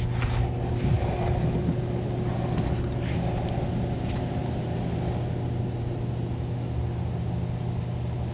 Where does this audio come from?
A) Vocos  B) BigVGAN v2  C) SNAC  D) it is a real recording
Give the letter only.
D